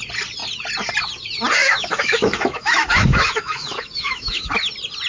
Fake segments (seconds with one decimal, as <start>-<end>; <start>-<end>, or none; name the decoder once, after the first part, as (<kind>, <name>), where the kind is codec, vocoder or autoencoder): 1.6-4.5 (autoencoder, DAC-VAE)

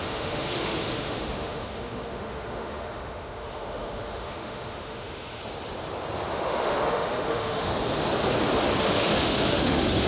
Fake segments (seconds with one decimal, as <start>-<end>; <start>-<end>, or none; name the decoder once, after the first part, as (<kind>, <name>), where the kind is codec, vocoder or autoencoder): 0.0-5.4 (autoencoder, DAC-VAE); 6.3-7.7; 8.8-10.1

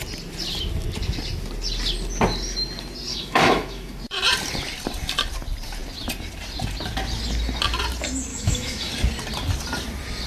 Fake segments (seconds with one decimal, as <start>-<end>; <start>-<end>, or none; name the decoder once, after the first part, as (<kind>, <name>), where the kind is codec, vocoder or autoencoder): 3.1-4.0 (autoencoder, DAC-VAE); 8.3-8.9

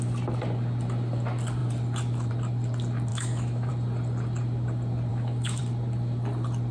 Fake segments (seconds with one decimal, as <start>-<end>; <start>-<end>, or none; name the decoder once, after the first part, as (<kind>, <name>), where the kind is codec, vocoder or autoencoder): 3.1-3.7 (autoencoder, DAC-VAE); 5.1-5.6

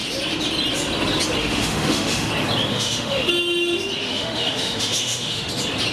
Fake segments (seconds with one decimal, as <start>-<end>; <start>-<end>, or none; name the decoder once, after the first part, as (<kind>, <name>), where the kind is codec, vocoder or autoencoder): 1.4-2.3 (autoencoder, DAC-VAE); 2.7-3.3; 4.0-5.5